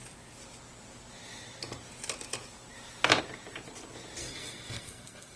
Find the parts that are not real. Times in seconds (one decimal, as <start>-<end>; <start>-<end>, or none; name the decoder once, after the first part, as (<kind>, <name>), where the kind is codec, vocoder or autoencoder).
4.2-5.4 (codec, SNAC)